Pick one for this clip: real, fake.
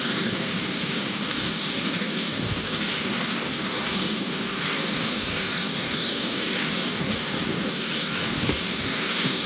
fake